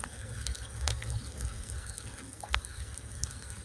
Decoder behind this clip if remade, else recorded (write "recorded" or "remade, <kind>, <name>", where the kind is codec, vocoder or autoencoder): remade, codec, SNAC